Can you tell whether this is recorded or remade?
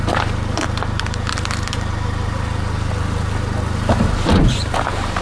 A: remade